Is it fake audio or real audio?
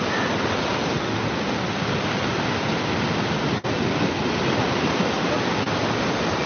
real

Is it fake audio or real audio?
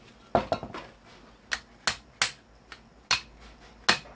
real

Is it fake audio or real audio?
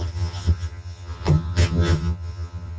fake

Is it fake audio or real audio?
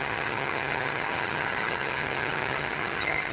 fake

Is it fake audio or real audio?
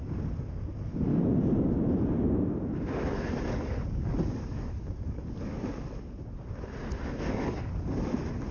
real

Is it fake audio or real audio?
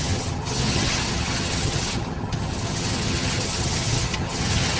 fake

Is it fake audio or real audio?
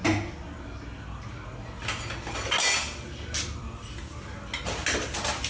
real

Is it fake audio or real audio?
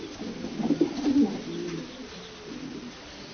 real